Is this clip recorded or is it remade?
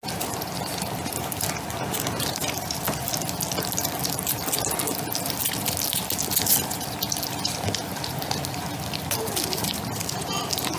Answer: recorded